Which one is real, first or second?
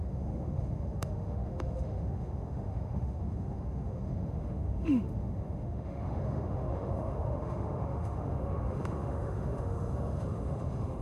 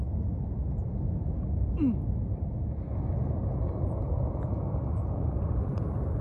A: second